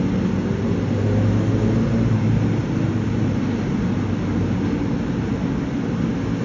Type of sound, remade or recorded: recorded